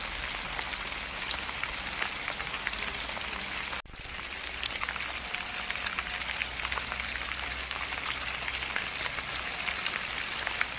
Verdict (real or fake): real